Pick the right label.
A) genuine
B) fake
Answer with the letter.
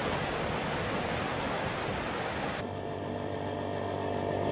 A